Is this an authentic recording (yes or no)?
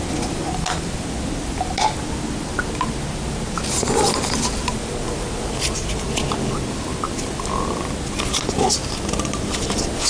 yes